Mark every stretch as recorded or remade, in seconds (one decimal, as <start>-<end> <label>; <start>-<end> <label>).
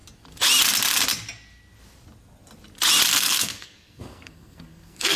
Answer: 0.0-3.1 recorded; 3.1-5.2 remade